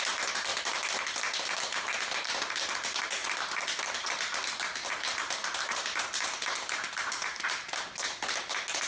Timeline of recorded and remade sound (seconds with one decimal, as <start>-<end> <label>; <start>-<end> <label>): 0.0-0.5 recorded; 0.5-1.0 remade; 1.0-3.2 recorded; 3.2-5.6 remade; 5.6-8.9 recorded